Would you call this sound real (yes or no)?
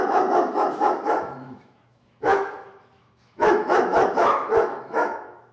no